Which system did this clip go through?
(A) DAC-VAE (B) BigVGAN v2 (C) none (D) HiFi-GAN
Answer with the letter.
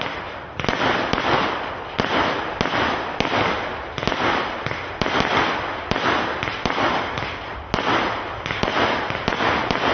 C